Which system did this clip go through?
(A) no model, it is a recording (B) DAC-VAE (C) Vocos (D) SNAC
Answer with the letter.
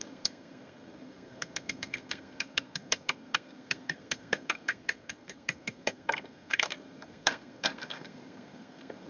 D